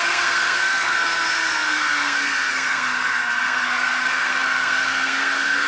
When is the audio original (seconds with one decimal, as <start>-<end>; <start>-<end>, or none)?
none